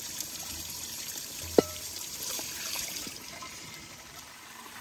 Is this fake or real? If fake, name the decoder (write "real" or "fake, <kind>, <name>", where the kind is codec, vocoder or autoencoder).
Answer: fake, vocoder, BigVGAN v2